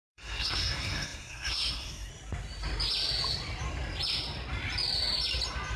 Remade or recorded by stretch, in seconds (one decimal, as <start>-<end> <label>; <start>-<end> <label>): 0.0-2.1 remade; 2.1-5.8 recorded